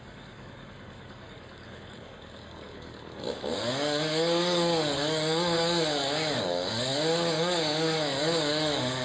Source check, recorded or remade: remade